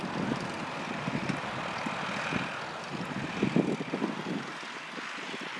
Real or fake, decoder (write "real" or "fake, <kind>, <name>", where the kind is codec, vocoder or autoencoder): real